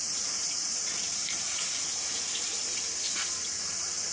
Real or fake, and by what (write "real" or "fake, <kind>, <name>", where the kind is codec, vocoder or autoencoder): fake, vocoder, Vocos